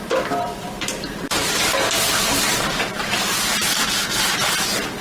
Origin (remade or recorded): remade